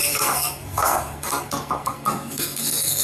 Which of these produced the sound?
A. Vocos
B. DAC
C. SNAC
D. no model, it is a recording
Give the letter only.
C